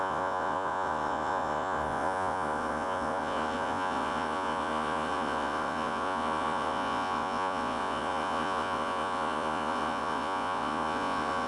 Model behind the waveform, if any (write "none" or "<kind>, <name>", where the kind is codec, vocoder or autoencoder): vocoder, Vocos